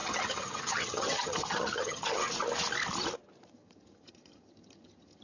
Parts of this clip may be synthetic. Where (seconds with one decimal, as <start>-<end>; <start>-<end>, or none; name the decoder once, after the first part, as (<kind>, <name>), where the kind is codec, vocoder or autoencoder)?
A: 0.0-2.2 (vocoder, HiFi-GAN); 3.5-5.2